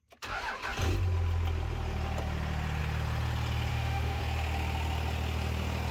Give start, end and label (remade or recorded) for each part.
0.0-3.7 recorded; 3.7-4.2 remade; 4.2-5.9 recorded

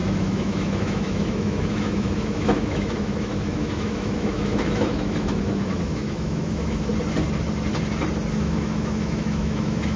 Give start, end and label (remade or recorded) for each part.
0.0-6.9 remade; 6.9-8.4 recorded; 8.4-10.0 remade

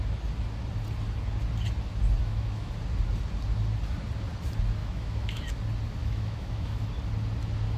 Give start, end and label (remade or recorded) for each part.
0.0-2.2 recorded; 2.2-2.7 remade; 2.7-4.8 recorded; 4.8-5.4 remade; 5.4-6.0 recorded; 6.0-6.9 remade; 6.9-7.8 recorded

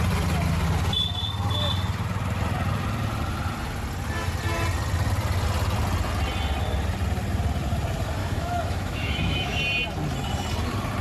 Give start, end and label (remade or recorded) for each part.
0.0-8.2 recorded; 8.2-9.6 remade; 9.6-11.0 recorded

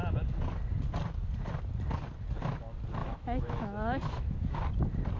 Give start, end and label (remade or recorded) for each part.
0.0-3.0 recorded; 3.0-4.6 remade; 4.6-5.2 recorded

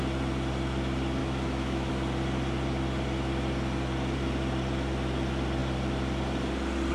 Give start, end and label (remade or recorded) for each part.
0.0-1.2 recorded; 1.2-1.9 remade; 1.9-6.9 recorded

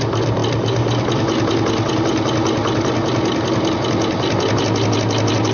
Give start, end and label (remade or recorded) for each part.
0.0-5.5 recorded